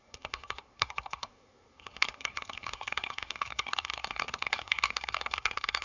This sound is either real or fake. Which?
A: fake